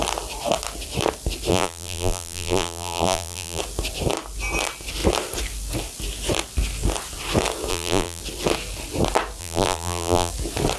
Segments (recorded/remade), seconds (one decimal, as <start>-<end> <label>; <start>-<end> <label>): 0.0-1.5 recorded; 1.5-3.6 remade; 3.6-7.7 recorded; 7.7-8.2 remade; 8.2-9.4 recorded; 9.4-10.3 remade; 10.3-10.8 recorded